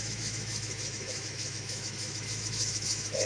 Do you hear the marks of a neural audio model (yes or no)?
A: yes